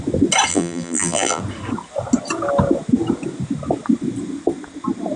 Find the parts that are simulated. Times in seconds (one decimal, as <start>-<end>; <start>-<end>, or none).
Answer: 0.5-1.4